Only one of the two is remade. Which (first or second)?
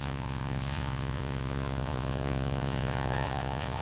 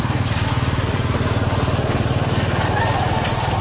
first